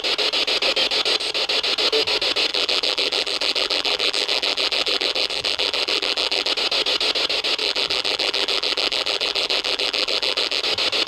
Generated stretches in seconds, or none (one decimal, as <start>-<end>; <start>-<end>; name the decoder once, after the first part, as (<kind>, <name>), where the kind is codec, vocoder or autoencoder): 2.5-6.5 (vocoder, BigVGAN v2); 7.6-10.6